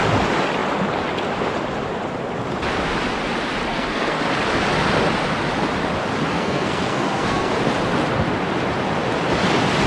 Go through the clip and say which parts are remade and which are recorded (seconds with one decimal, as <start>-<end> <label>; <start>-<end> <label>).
0.0-3.7 recorded; 3.7-4.2 remade; 4.2-6.3 recorded; 6.3-7.5 remade; 7.5-9.9 recorded